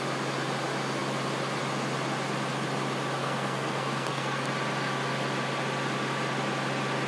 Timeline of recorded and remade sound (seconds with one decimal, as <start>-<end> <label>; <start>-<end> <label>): 0.0-3.2 recorded; 3.2-4.5 remade; 4.5-7.1 recorded